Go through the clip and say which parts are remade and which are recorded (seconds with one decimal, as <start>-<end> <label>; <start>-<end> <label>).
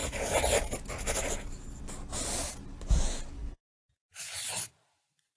0.0-3.4 recorded; 3.4-4.2 remade; 4.2-5.4 recorded